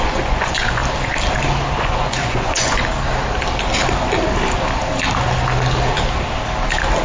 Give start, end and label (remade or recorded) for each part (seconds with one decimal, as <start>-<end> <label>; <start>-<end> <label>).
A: 0.0-0.8 remade; 0.8-1.8 recorded; 1.8-2.8 remade; 2.8-7.0 recorded